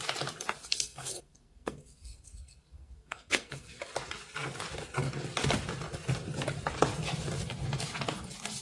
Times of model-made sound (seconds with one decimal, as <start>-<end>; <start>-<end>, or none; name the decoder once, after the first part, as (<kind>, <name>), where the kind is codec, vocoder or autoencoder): 0.7-3.8 (codec, SNAC)